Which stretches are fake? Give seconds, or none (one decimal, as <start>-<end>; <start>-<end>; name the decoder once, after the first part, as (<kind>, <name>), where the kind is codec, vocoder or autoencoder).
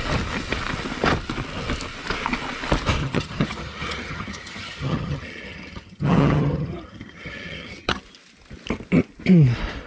3.0-8.0 (vocoder, HiFi-GAN)